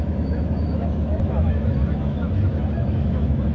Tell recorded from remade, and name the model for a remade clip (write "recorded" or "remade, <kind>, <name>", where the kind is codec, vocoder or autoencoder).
remade, autoencoder, DAC-VAE